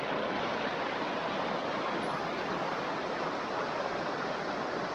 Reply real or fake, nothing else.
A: real